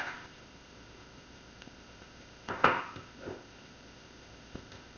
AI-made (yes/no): yes